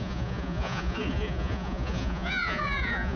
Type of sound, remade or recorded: remade